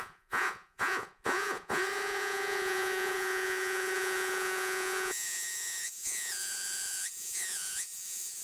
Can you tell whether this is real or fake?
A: fake